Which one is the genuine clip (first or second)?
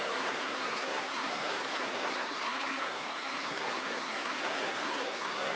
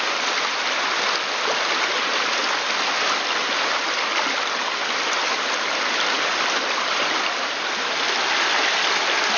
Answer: second